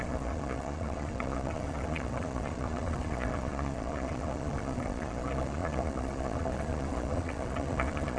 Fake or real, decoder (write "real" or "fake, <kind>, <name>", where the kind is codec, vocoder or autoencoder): fake, vocoder, Vocos